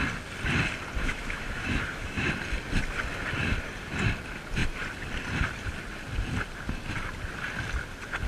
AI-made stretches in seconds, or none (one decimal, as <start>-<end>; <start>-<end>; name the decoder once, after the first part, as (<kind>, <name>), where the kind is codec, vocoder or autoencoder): 1.0-2.3 (autoencoder, DAC-VAE)

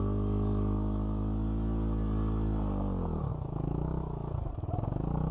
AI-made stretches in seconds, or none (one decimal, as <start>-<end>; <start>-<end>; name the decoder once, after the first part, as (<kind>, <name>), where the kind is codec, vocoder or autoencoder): 3.3-4.5 (autoencoder, DAC-VAE)